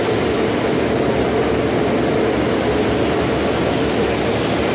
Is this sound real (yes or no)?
yes